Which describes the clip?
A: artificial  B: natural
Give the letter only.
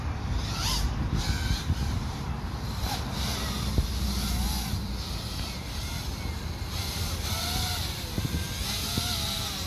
B